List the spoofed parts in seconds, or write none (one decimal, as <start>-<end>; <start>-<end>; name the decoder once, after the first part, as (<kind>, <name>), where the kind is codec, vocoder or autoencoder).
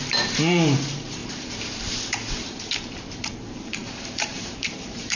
0.0-1.2 (vocoder, BigVGAN v2); 2.8-5.2